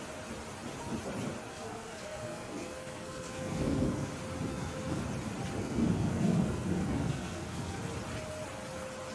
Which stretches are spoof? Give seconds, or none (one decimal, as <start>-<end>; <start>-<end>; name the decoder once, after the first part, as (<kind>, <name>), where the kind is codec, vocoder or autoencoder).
1.5-4.1 (codec, SNAC); 4.5-5.0; 5.6-7.8

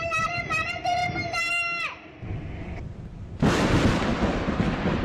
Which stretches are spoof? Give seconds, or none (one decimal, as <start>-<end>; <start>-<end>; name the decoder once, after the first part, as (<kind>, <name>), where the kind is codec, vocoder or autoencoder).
0.0-1.0 (vocoder, BigVGAN v2); 2.6-4.1

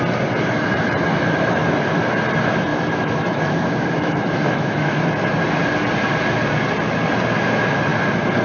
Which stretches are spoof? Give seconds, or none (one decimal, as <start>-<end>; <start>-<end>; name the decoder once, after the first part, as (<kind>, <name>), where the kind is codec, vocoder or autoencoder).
2.7-5.1 (autoencoder, DAC-VAE)

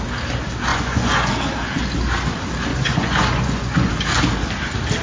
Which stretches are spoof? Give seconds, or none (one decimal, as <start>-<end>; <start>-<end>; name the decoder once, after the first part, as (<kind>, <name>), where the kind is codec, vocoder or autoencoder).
0.7-1.3 (vocoder, Vocos); 2.7-3.9